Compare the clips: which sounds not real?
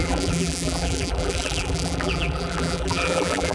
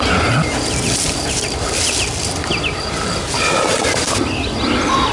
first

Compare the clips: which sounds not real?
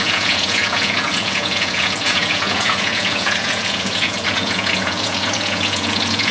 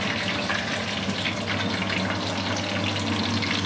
first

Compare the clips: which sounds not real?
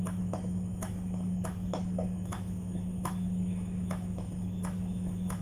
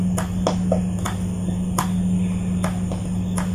first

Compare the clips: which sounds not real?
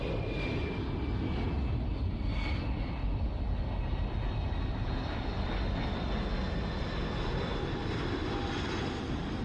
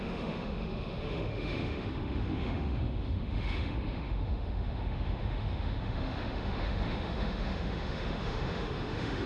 second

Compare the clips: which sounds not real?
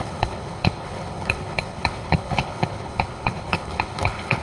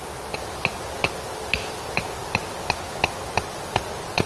first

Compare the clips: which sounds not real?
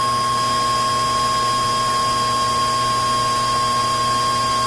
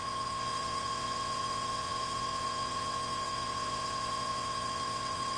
second